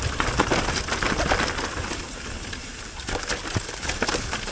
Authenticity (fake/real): real